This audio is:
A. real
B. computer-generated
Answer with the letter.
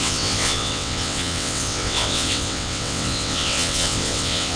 B